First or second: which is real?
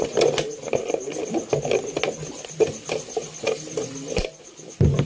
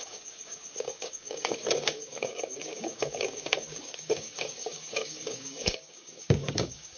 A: first